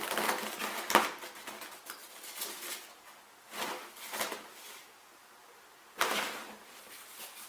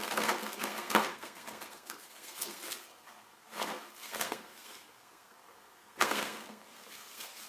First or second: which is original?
first